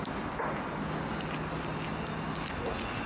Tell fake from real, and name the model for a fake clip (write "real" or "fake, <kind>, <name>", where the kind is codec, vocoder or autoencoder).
real